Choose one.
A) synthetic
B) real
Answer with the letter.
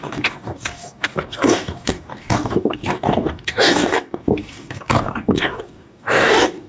A